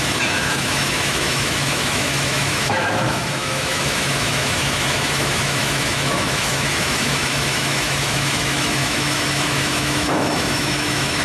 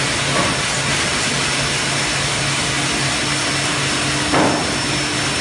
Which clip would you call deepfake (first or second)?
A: first